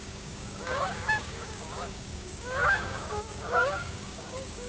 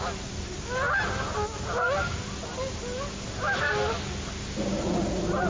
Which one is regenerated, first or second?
first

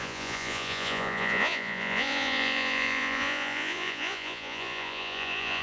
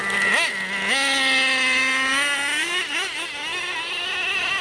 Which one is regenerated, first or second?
first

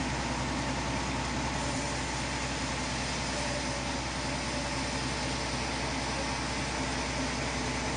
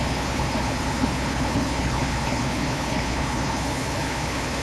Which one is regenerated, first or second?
second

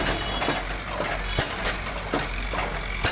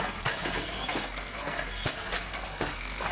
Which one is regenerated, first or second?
second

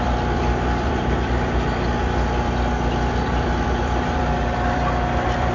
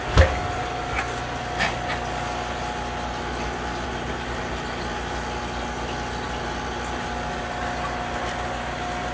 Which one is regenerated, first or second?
first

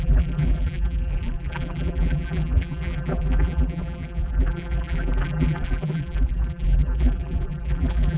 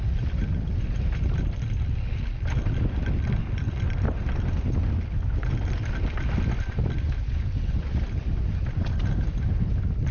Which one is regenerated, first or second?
first